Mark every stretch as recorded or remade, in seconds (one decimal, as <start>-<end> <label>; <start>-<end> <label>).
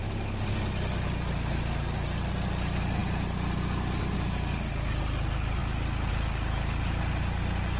0.0-7.8 recorded